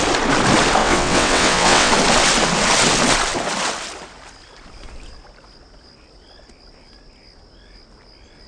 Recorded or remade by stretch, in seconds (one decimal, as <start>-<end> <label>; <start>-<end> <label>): 0.0-0.8 recorded; 0.8-1.9 remade; 1.9-8.5 recorded